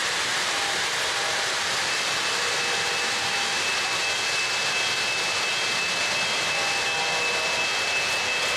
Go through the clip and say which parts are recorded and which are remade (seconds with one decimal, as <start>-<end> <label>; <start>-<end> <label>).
0.0-8.6 recorded